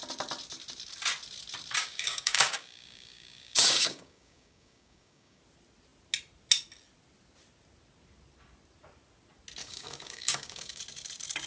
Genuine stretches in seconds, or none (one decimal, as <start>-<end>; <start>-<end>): 0.0-1.8; 5.4-9.6; 10.8-11.5